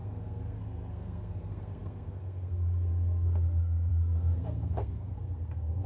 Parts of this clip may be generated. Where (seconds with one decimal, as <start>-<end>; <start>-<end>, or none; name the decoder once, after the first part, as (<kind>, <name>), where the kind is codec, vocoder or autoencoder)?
0.0-5.9 (codec, SNAC)